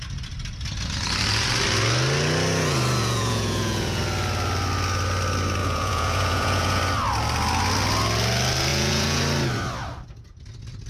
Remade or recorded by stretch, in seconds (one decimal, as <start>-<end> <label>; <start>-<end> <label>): 0.0-3.0 recorded; 3.0-4.0 remade; 4.0-5.6 recorded; 5.6-6.8 remade; 6.8-8.7 recorded; 8.7-9.2 remade; 9.2-10.9 recorded